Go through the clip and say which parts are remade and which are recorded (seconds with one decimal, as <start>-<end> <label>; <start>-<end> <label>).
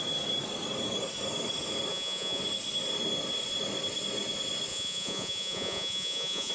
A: 0.0-1.9 recorded; 1.9-2.4 remade; 2.4-4.7 recorded; 4.7-6.5 remade